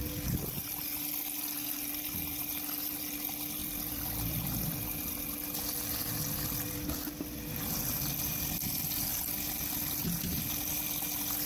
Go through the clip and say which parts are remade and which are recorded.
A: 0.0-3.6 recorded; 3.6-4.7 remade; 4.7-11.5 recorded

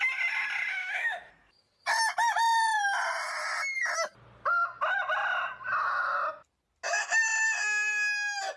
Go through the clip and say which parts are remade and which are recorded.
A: 0.0-0.7 recorded; 0.7-1.3 remade; 1.3-8.6 recorded

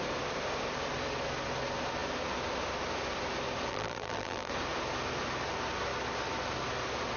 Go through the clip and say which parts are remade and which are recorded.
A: 0.0-3.7 recorded; 3.7-4.5 remade; 4.5-7.2 recorded

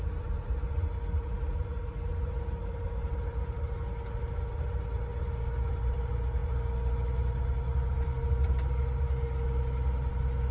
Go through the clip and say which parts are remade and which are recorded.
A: 0.0-10.5 recorded

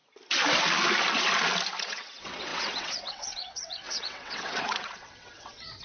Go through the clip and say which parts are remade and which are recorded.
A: 0.0-1.8 recorded; 1.8-5.8 remade

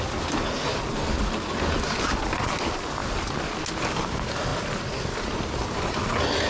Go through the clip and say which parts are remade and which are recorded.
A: 0.0-6.5 recorded

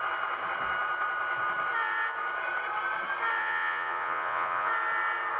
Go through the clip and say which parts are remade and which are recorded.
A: 0.0-3.4 recorded; 3.4-4.7 remade; 4.7-5.4 recorded